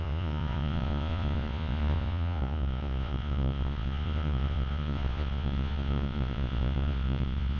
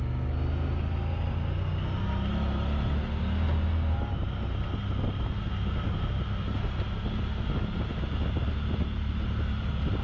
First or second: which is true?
second